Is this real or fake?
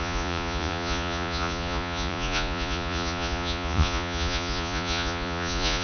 fake